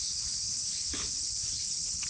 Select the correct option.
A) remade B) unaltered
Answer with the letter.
A